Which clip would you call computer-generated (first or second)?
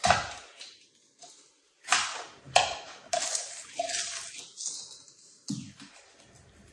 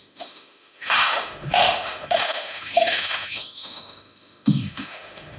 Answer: second